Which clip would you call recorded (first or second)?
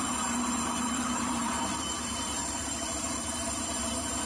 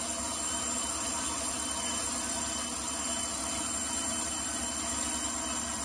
second